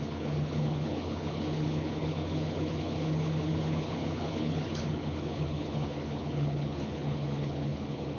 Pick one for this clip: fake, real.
fake